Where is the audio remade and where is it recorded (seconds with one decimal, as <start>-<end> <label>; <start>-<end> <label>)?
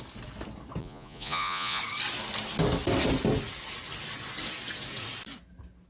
0.0-0.8 recorded; 0.8-1.8 remade; 1.8-5.9 recorded